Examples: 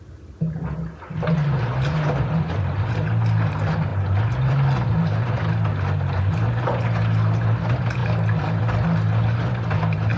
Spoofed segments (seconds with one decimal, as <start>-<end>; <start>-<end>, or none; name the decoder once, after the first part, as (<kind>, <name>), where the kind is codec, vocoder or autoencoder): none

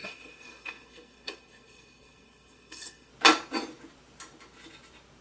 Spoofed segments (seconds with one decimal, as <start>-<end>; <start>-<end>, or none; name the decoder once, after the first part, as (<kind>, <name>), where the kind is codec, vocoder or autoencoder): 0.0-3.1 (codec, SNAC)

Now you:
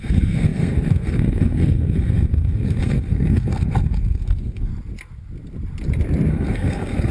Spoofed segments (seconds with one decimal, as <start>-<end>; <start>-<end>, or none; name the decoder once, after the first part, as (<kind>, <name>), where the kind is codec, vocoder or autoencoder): 0.0-4.7 (codec, SNAC); 6.3-7.1

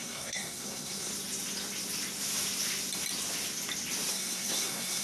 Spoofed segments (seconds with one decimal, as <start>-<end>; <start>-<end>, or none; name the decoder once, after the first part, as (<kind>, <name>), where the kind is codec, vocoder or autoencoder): 0.0-1.1 (codec, SNAC); 4.1-5.0